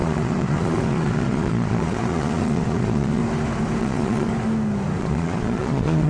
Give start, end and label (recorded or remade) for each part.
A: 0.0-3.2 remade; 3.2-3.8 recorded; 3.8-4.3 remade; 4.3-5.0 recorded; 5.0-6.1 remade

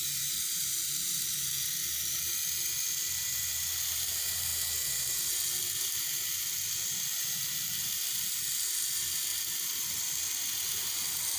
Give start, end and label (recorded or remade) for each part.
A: 0.0-1.8 remade; 1.8-3.4 recorded; 3.4-4.5 remade; 4.5-8.7 recorded; 8.7-9.3 remade; 9.3-11.4 recorded

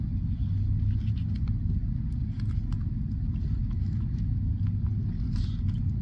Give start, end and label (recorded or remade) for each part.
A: 0.0-3.6 recorded; 3.6-4.5 remade; 4.5-6.0 recorded

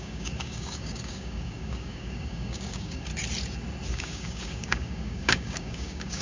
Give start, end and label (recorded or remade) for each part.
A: 0.0-3.1 remade; 3.1-3.9 recorded; 3.9-6.2 remade

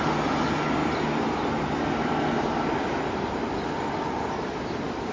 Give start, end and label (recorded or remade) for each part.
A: 0.0-5.1 recorded

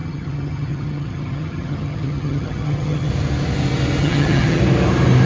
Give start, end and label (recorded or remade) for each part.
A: 0.0-3.1 remade; 3.1-4.0 recorded; 4.0-4.6 remade; 4.6-5.2 recorded

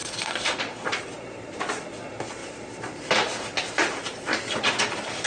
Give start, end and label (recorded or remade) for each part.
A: 0.0-0.6 remade; 0.6-5.3 recorded